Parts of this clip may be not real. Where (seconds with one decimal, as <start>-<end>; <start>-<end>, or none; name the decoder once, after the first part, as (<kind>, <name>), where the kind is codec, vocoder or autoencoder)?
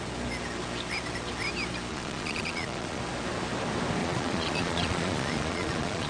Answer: 1.9-3.0 (vocoder, Vocos); 4.0-6.1